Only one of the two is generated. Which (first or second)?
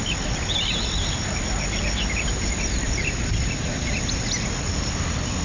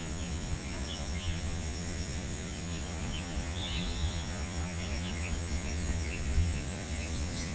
second